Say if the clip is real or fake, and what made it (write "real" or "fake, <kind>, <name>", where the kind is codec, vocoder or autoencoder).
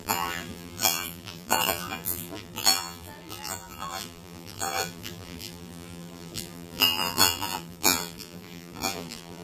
fake, vocoder, BigVGAN v2